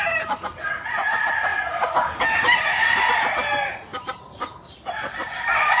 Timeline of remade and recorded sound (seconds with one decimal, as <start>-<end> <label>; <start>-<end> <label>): 0.0-1.5 recorded; 1.5-3.1 remade; 3.1-3.9 recorded; 3.9-4.9 remade; 4.9-5.8 recorded